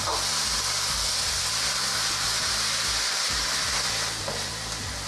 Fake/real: real